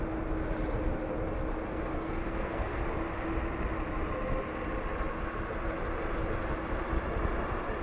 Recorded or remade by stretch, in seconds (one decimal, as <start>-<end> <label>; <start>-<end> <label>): 0.0-1.7 recorded; 1.7-2.8 remade; 2.8-7.8 recorded